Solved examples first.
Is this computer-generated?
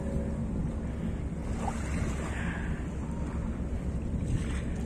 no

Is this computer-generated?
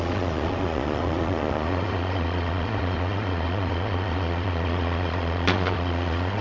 yes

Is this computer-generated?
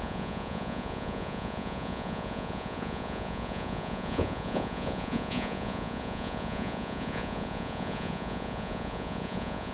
yes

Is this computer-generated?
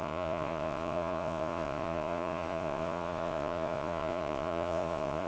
yes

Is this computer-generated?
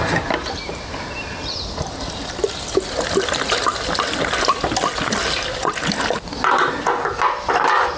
no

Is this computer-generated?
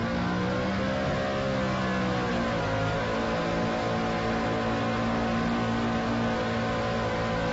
no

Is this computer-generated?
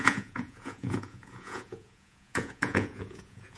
yes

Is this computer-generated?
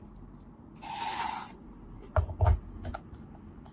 no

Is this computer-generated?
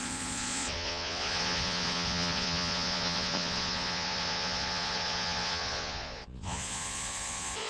yes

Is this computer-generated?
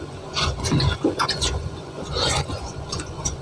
yes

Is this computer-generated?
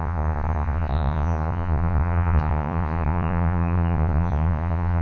yes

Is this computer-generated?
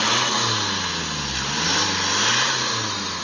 no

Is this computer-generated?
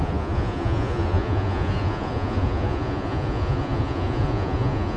yes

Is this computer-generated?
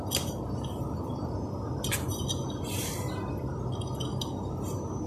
no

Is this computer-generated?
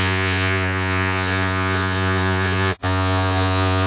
yes